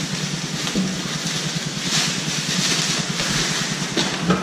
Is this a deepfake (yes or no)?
no